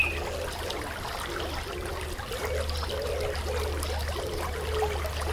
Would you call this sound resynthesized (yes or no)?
no